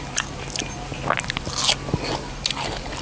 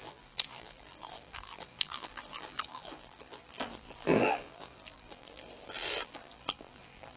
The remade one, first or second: second